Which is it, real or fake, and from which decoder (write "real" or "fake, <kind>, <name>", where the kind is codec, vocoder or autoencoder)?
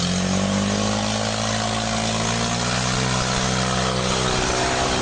real